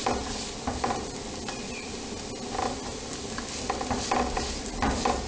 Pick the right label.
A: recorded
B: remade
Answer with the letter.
A